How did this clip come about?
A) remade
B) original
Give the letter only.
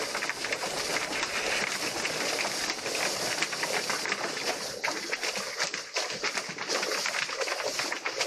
B